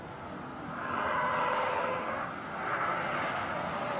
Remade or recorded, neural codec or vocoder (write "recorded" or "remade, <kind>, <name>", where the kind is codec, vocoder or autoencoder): recorded